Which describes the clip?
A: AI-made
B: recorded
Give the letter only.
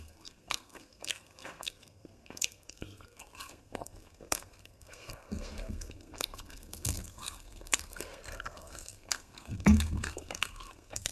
A